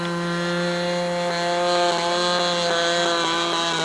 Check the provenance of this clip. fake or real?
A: real